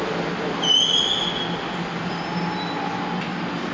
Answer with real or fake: real